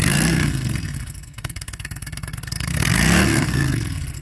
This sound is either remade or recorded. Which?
remade